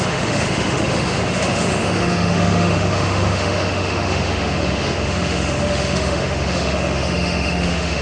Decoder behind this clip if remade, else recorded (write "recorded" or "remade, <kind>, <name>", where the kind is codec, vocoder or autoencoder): remade, autoencoder, DAC-VAE